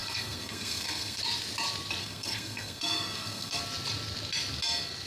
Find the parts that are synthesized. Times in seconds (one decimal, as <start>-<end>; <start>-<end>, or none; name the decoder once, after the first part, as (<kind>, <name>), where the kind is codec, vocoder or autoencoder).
0.0-1.2 (codec, SNAC); 2.0-3.6